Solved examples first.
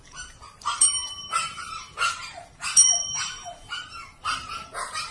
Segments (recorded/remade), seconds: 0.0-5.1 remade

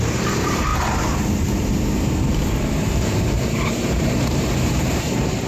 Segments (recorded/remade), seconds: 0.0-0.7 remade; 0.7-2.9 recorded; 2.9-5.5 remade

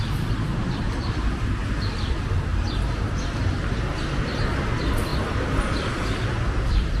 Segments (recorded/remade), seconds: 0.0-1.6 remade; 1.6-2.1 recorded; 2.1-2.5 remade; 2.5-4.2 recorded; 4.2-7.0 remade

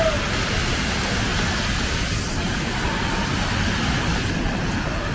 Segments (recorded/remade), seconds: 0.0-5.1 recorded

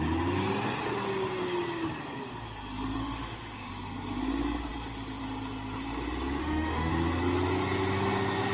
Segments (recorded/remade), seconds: 0.0-3.0 recorded; 3.0-3.7 remade; 3.7-6.4 recorded; 6.4-6.9 remade; 6.9-8.5 recorded

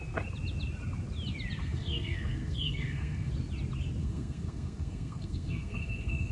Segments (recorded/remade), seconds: 0.0-1.6 recorded; 1.6-3.3 remade; 3.3-4.0 recorded; 4.0-6.3 remade